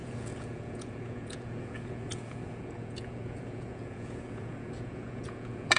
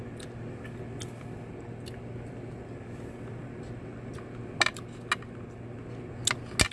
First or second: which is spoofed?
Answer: first